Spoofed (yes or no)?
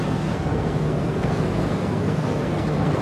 yes